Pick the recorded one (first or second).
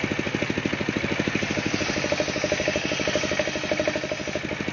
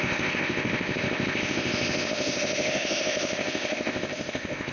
first